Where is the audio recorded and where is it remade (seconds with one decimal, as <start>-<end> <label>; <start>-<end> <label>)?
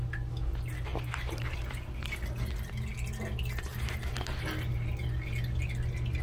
0.0-0.9 recorded; 0.9-2.2 remade; 2.2-3.7 recorded; 3.7-5.0 remade; 5.0-6.2 recorded